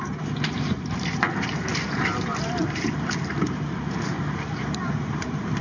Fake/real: fake